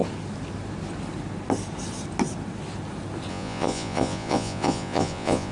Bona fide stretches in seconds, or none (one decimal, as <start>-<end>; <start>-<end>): 0.0-3.3